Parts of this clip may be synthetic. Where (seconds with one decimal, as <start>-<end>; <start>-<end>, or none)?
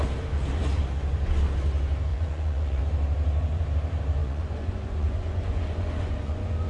2.1-2.8; 4.2-6.7